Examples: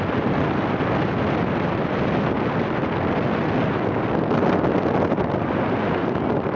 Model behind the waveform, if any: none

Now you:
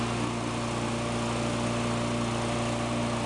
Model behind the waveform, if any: none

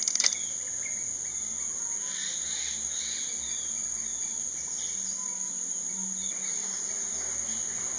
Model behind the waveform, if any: none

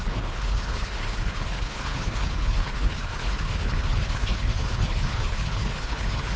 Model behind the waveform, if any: codec, HILCodec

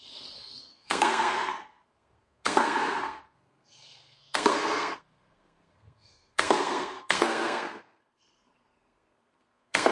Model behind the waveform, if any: codec, SNAC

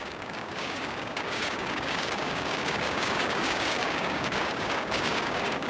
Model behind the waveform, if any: codec, DAC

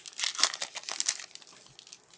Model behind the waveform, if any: none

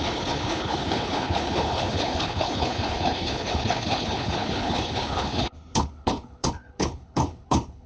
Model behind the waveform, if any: codec, HILCodec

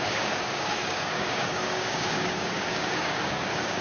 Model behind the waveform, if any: codec, DAC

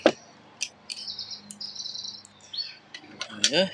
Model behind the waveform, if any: none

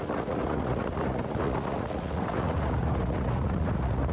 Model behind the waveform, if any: vocoder, Vocos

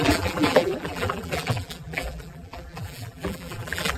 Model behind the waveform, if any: vocoder, BigVGAN v2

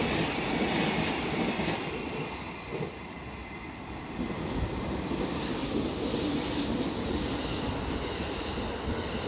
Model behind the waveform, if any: none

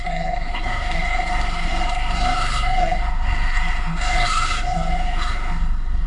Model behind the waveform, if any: codec, SNAC